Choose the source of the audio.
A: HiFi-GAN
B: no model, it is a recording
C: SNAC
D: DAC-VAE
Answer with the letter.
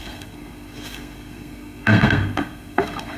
C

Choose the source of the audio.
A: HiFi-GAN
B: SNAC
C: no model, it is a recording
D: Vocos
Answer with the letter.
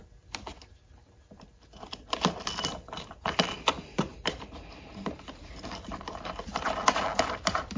C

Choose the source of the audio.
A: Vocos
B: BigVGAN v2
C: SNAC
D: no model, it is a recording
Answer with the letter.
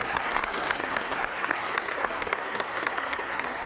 C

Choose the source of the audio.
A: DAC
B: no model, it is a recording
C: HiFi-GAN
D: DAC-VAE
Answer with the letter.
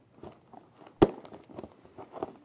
B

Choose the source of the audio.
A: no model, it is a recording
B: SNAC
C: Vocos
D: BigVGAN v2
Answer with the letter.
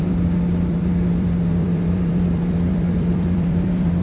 D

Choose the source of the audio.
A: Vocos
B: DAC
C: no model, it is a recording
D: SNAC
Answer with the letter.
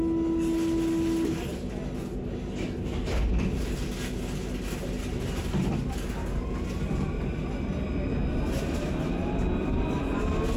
C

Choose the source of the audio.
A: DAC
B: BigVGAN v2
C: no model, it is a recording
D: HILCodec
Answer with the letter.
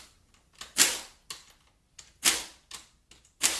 C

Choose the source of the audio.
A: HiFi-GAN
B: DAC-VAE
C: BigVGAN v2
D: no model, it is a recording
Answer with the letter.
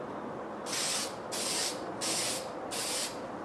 D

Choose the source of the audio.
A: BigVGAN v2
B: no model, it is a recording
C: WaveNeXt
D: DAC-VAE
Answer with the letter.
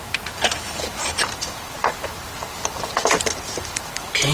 A